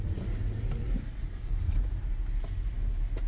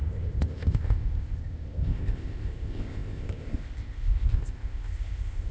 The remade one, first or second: second